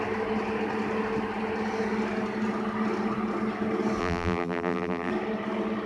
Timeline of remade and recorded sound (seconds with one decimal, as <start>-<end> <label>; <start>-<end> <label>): 0.0-4.0 recorded; 4.0-5.1 remade; 5.1-5.9 recorded